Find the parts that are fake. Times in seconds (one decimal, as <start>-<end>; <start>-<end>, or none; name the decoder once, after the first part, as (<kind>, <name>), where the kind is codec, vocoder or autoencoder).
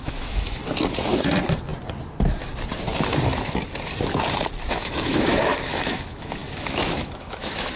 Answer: 0.0-0.6 (autoencoder, DAC-VAE); 4.7-7.8